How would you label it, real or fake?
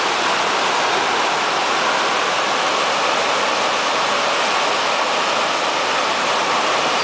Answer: real